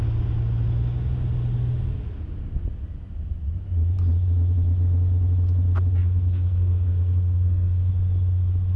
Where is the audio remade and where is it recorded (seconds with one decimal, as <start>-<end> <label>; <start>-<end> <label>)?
0.0-6.0 recorded; 6.0-7.9 remade; 7.9-8.8 recorded